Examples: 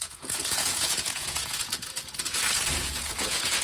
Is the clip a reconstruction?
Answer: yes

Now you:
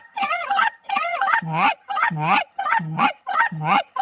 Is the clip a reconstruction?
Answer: yes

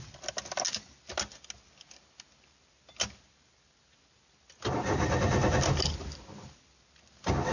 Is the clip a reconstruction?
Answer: no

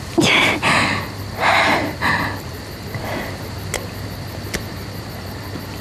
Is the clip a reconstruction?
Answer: no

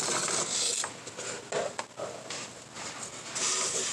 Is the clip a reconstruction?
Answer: no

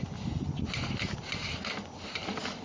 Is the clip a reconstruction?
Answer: no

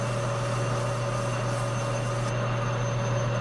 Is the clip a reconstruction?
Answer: no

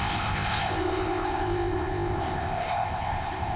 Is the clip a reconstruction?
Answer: yes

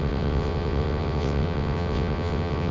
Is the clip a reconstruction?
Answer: yes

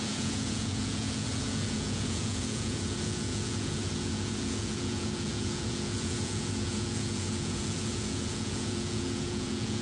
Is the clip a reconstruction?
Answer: yes